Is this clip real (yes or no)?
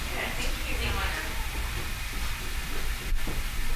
yes